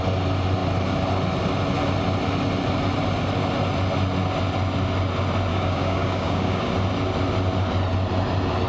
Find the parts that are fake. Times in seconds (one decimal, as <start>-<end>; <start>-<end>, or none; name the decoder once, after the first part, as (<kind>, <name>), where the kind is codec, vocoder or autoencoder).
5.5-6.7 (codec, DAC)